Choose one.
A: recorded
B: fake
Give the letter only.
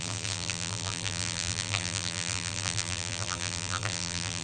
B